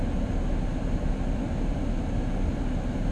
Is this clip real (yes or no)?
yes